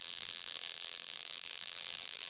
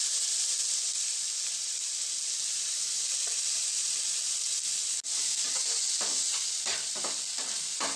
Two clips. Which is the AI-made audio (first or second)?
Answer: first